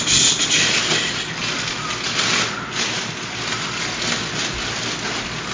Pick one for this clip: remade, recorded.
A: recorded